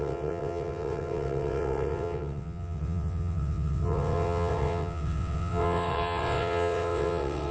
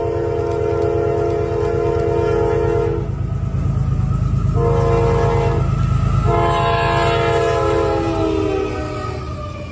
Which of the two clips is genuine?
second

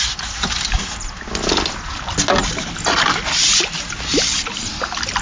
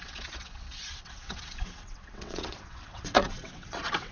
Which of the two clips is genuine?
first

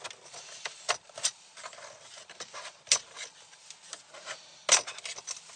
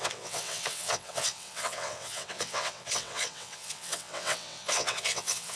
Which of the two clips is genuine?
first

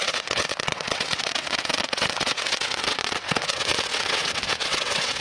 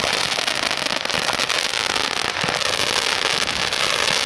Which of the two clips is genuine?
second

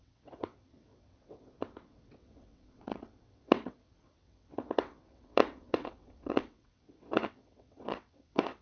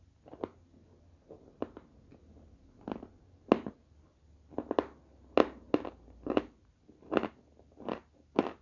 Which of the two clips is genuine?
second